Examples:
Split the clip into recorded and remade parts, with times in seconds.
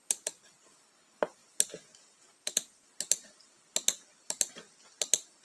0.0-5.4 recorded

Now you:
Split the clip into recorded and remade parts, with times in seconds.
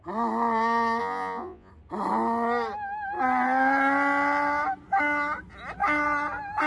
0.0-1.0 recorded; 1.0-1.7 remade; 1.7-6.7 recorded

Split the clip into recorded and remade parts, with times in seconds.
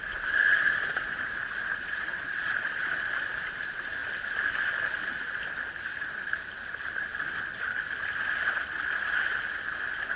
0.0-0.4 recorded; 0.4-2.6 remade; 2.6-10.2 recorded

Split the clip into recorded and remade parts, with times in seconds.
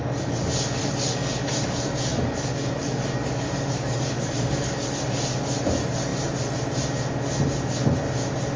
0.0-0.8 recorded; 0.8-1.3 remade; 1.3-2.1 recorded; 2.1-4.9 remade; 4.9-8.6 recorded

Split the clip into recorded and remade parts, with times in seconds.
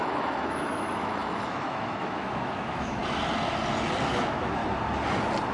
0.0-3.0 remade; 3.0-4.1 recorded; 4.1-4.6 remade; 4.6-5.5 recorded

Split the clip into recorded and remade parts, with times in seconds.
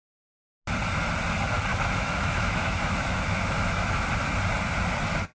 0.0-1.7 recorded; 1.7-4.1 remade; 4.1-5.3 recorded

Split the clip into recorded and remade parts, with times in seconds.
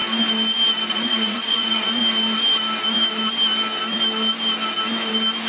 0.0-0.9 recorded; 0.9-2.0 remade; 2.0-5.5 recorded